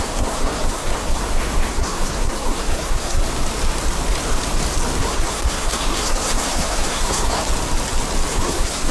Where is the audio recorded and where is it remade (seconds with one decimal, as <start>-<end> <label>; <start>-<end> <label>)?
0.0-1.2 remade; 1.2-1.7 recorded; 1.7-3.2 remade; 3.2-5.0 recorded; 5.0-7.4 remade; 7.4-8.3 recorded; 8.3-8.9 remade